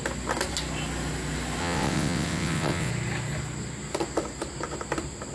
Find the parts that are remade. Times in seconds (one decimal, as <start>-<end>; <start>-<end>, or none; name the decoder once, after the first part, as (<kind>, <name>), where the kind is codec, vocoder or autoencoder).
1.6-2.9 (vocoder, WaveNeXt)